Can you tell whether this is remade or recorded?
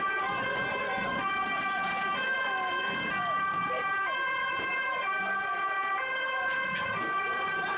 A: recorded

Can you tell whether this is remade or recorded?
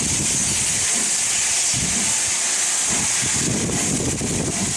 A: recorded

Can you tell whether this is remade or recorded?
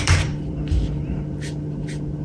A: remade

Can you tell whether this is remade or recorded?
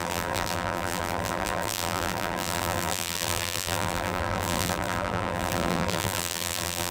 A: remade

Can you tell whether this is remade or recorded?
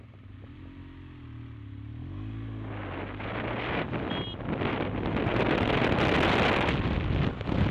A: recorded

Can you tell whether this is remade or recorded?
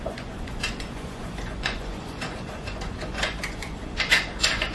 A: remade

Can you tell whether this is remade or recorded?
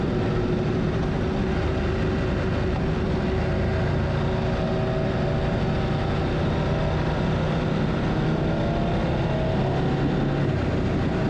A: recorded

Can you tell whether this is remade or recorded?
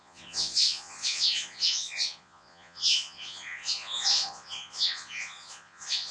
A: remade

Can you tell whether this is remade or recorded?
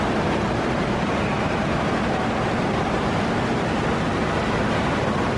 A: recorded